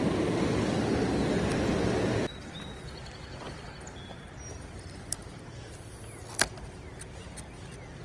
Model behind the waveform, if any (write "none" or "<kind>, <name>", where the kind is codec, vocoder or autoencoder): none